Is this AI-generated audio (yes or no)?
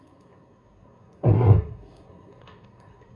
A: yes